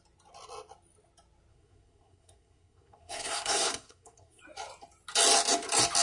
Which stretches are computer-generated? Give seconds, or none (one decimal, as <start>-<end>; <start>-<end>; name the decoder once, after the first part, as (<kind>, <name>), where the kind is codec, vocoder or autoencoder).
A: 1.5-4.4 (codec, SNAC)